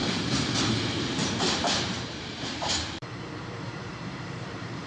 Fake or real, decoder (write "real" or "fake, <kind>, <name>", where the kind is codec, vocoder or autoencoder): fake, vocoder, BigVGAN v2